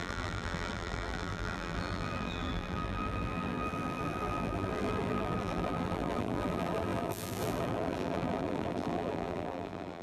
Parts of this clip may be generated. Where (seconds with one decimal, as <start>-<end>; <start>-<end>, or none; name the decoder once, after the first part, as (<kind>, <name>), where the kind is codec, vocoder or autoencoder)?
0.0-10.0 (vocoder, BigVGAN v2)